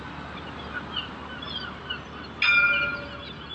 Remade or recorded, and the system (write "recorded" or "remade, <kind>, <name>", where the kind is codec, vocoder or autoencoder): recorded